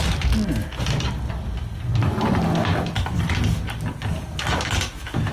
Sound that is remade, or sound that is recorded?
recorded